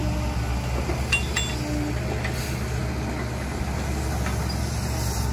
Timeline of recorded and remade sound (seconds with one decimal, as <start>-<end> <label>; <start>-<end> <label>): 0.0-5.3 recorded